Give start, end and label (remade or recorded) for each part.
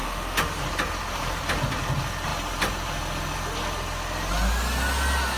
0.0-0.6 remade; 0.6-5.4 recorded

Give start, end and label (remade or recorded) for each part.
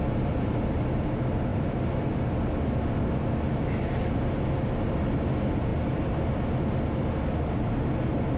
0.0-8.4 recorded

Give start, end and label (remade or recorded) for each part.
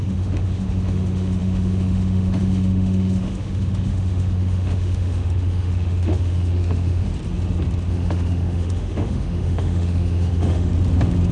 0.0-7.1 remade; 7.1-7.9 recorded; 7.9-10.7 remade; 10.7-11.3 recorded